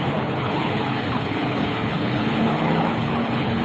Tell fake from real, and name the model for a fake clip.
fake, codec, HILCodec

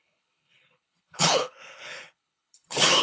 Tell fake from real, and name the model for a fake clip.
fake, codec, HILCodec